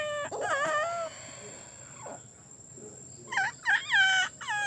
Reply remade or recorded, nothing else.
recorded